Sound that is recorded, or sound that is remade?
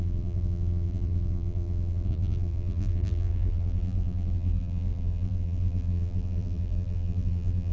remade